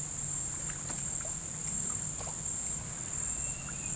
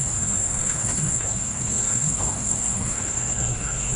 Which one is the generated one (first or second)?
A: second